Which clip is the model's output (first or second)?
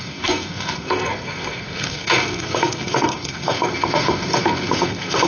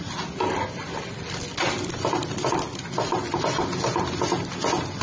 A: first